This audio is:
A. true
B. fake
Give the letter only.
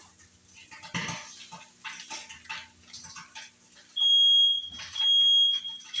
A